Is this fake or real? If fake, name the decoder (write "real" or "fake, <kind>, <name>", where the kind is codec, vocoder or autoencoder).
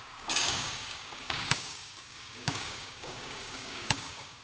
fake, codec, DAC